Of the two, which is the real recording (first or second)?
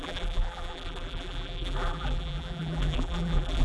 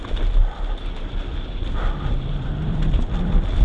second